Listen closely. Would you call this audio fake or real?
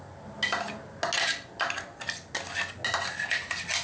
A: real